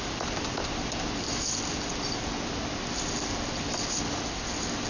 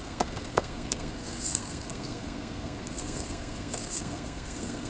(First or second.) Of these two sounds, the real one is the first